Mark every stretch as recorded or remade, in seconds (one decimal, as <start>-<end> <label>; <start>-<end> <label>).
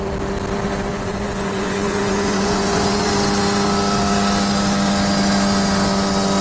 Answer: 0.0-0.9 recorded; 0.9-3.1 remade; 3.1-6.4 recorded